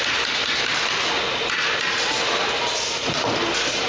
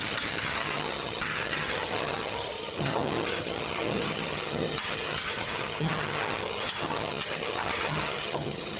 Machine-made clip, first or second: second